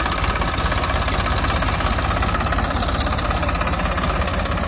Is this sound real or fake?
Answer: real